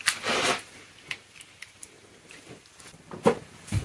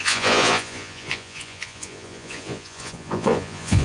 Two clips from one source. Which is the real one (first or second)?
first